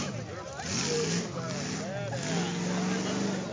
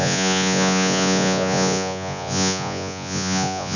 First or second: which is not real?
second